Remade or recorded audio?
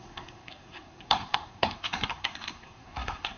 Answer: remade